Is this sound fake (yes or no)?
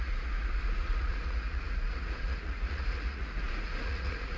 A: yes